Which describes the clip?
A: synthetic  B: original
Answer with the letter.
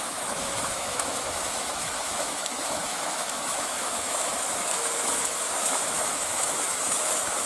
A